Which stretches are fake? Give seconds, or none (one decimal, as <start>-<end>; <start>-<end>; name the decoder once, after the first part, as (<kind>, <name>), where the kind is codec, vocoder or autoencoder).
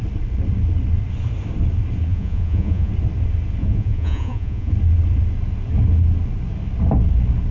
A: 2.1-2.9 (vocoder, Vocos); 3.6-4.7